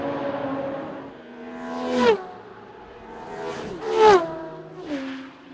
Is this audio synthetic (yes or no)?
no